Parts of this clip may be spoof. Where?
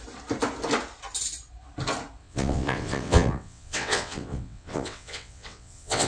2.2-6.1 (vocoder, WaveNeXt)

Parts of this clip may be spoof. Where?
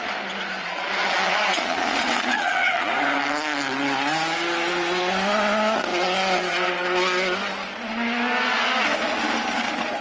0.6-2.9 (vocoder, Vocos)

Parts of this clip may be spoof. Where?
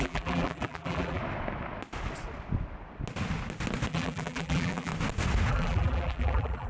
0.0-1.2 (vocoder, BigVGAN v2); 3.9-4.9; 5.5-6.7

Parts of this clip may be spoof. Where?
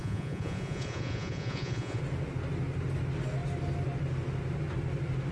0.0-2.0 (vocoder, Vocos)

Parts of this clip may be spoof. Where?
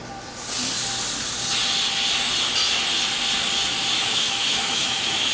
4.0-5.3 (autoencoder, DAC-VAE)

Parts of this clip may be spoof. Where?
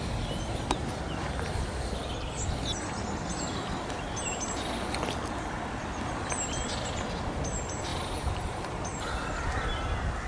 7.9-9.0 (vocoder, BigVGAN v2)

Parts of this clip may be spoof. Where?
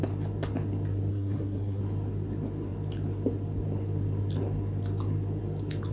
1.1-1.8 (codec, SNAC)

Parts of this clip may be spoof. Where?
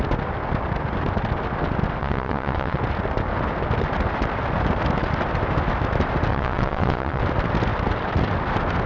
2.0-2.8 (vocoder, WaveNeXt); 6.3-7.2